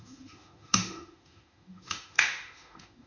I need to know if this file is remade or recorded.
remade